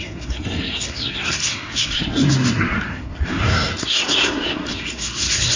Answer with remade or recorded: remade